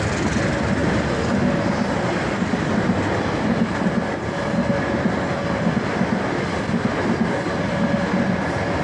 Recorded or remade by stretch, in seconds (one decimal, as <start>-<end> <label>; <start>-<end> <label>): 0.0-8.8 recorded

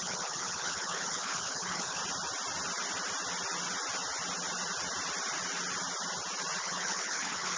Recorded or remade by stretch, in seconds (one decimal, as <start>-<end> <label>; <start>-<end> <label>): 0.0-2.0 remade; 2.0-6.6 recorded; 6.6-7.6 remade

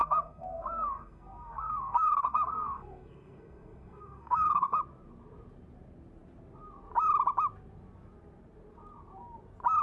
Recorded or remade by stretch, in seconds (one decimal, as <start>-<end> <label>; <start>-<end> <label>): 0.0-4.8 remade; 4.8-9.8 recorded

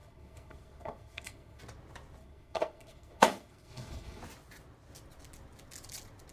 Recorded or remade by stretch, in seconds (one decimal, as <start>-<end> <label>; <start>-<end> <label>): 0.0-1.6 remade; 1.6-2.2 recorded; 2.2-4.2 remade; 4.2-6.3 recorded

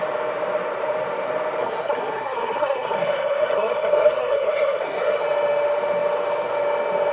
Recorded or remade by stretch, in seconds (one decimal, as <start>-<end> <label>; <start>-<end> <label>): 0.0-1.6 recorded; 1.6-5.2 remade; 5.2-7.1 recorded

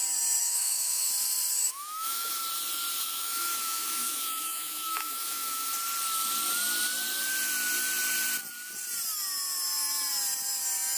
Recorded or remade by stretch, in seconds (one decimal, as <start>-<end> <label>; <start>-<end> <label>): 0.0-0.4 recorded; 0.4-1.1 remade; 1.1-1.6 recorded; 1.6-2.3 remade; 2.3-3.0 recorded; 3.0-5.7 remade; 5.7-11.0 recorded

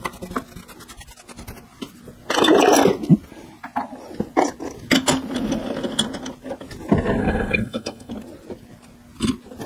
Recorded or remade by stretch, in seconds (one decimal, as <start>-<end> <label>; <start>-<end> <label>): 0.0-7.2 recorded; 7.2-8.1 remade; 8.1-9.7 recorded

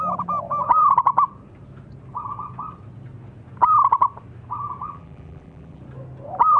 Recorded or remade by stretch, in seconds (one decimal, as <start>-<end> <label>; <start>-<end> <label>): 0.0-4.8 recorded; 4.8-5.8 remade; 5.8-6.6 recorded